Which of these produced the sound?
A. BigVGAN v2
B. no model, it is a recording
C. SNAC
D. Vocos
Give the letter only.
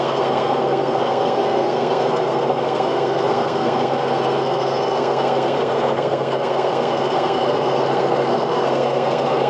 C